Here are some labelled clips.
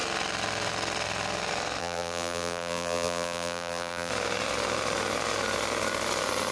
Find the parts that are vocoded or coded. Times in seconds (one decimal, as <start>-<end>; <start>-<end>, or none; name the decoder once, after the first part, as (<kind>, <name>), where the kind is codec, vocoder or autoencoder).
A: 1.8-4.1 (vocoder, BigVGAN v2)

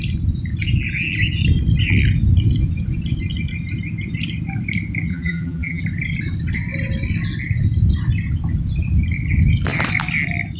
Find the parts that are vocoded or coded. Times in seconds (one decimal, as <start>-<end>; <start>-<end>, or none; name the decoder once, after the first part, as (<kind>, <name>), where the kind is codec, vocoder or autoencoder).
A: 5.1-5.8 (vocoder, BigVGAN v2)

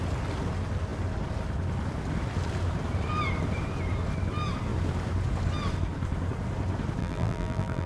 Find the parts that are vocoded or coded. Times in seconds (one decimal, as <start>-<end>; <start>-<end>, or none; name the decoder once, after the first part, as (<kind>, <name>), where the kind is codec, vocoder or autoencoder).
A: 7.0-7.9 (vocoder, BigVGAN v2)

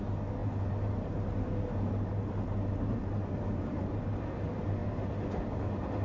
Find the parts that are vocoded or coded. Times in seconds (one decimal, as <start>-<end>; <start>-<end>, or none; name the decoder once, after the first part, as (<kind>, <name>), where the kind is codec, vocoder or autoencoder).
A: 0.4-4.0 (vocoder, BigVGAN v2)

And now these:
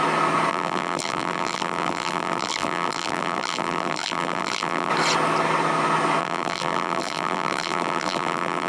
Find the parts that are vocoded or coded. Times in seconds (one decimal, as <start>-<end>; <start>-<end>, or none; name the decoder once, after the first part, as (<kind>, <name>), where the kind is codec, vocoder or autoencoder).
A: 0.5-4.9 (vocoder, BigVGAN v2); 6.2-8.7

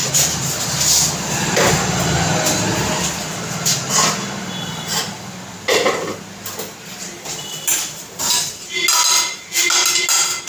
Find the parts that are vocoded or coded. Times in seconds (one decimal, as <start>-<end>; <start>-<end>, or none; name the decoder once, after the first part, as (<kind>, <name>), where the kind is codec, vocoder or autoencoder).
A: none